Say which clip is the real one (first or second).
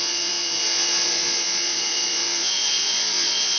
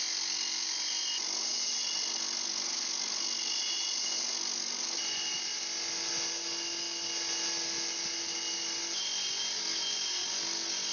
second